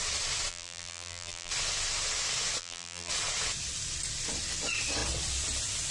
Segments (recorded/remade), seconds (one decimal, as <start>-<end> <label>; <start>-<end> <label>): 0.0-0.5 recorded; 0.5-1.5 remade; 1.5-2.6 recorded; 2.6-3.1 remade; 3.1-5.9 recorded